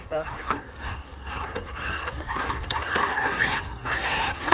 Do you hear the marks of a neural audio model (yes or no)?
yes